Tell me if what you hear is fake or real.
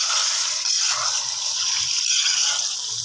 real